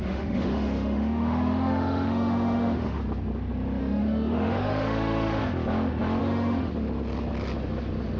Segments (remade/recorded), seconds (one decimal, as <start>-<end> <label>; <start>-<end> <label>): 0.0-3.0 remade; 3.0-3.8 recorded; 3.8-5.4 remade; 5.4-6.2 recorded; 6.2-6.7 remade; 6.7-8.2 recorded